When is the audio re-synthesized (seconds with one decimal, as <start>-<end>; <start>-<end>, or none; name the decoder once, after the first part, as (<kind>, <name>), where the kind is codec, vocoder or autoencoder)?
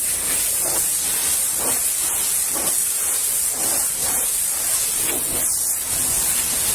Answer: none